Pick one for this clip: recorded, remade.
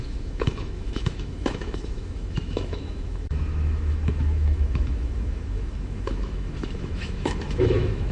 remade